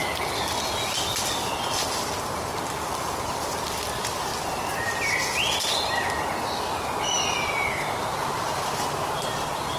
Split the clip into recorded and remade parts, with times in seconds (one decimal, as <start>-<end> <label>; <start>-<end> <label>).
0.0-9.8 recorded